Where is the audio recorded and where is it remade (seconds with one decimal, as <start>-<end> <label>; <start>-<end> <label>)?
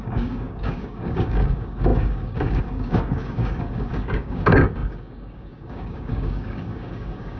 0.0-7.4 remade